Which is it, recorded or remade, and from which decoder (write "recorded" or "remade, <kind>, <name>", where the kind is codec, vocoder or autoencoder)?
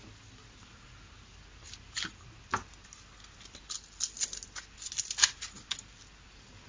recorded